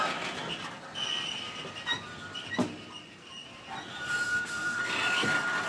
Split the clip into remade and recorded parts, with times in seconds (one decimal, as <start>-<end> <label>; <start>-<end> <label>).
0.0-4.3 recorded; 4.3-4.8 remade; 4.8-5.7 recorded